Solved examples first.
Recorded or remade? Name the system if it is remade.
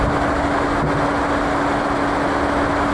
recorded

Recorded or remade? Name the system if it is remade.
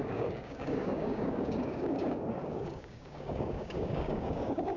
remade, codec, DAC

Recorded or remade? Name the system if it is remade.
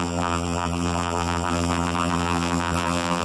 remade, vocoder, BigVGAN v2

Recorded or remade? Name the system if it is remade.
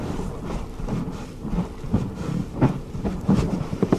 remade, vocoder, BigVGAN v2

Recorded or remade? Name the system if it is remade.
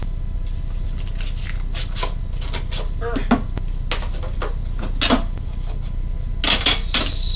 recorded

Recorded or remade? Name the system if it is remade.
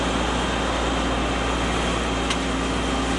recorded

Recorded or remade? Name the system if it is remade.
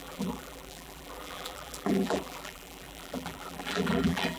remade, vocoder, BigVGAN v2